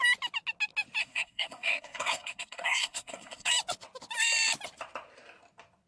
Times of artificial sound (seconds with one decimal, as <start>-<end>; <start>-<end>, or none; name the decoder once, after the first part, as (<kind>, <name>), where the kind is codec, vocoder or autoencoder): 1.0-3.5 (codec, SNAC)